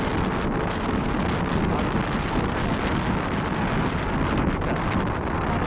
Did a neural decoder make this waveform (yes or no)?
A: no